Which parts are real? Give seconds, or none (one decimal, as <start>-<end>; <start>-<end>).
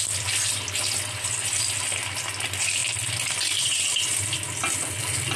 0.0-5.4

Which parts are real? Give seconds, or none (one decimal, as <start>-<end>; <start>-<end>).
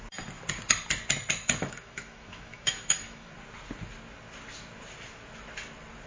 0.0-1.6; 3.3-6.1